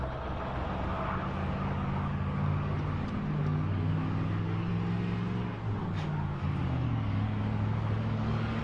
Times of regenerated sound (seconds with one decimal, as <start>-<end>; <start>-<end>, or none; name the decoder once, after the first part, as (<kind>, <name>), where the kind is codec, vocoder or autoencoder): 1.4-2.7 (codec, DAC); 3.4-4.7; 5.8-8.6